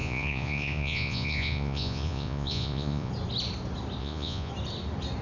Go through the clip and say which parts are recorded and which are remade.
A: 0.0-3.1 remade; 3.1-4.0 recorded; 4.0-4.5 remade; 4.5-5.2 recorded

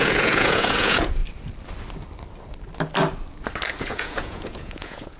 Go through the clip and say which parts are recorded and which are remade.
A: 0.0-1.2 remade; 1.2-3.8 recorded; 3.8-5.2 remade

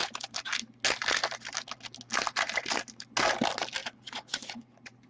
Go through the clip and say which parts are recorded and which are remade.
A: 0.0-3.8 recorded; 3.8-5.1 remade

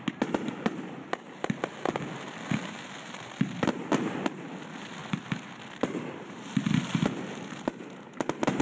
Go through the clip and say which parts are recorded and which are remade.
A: 0.0-8.6 recorded

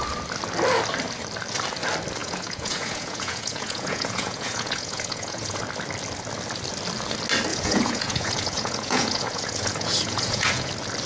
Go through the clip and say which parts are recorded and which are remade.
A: 0.0-2.2 recorded; 2.2-5.6 remade; 5.6-7.5 recorded; 7.5-10.7 remade; 10.7-11.1 recorded